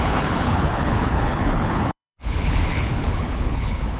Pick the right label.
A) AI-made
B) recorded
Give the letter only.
A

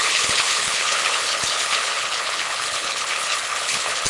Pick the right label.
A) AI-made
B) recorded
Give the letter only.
A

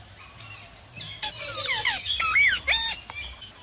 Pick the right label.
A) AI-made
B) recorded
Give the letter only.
B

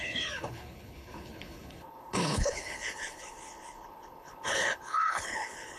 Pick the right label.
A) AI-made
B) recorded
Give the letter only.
A